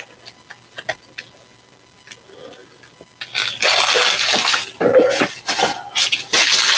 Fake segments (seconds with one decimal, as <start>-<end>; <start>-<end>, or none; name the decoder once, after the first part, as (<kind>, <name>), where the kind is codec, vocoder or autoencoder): none